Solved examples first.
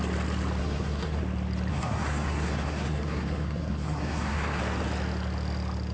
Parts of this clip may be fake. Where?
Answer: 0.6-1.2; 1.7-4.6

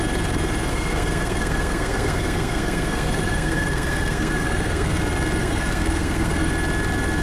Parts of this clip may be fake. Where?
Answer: 0.7-5.0; 5.4-6.5